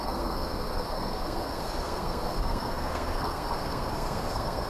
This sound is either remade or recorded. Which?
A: remade